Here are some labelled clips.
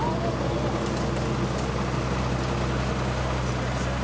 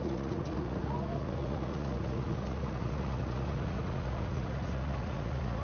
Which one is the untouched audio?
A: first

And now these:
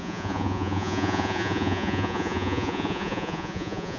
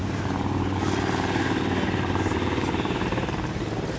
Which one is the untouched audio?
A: second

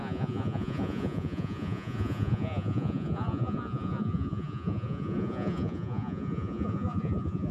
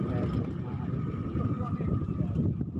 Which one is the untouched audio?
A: second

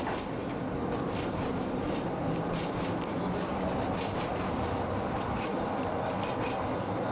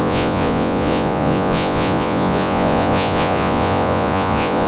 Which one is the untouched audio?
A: first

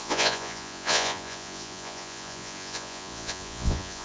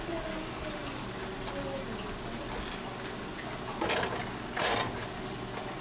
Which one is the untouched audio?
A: second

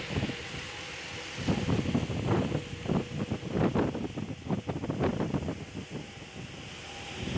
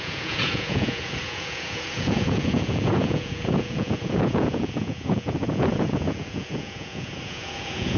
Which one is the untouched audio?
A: first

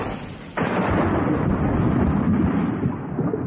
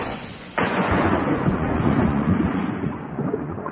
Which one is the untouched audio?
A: first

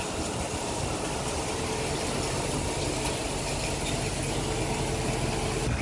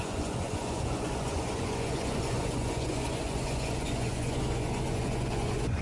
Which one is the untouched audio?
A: first